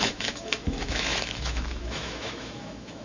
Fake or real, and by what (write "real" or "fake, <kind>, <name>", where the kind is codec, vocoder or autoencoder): fake, autoencoder, DAC-VAE